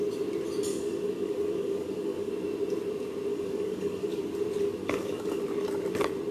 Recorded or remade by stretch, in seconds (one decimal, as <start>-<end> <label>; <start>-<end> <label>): 0.0-0.7 recorded; 0.7-2.3 remade; 2.3-3.3 recorded; 3.3-4.2 remade; 4.2-4.8 recorded; 4.8-5.4 remade; 5.4-6.3 recorded

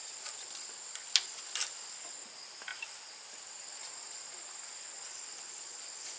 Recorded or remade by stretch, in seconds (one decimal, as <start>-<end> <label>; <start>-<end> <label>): 0.0-6.2 recorded

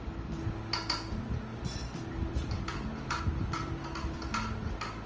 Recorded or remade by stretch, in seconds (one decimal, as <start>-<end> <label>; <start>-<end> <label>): 0.0-1.5 recorded; 1.5-3.2 remade; 3.2-5.1 recorded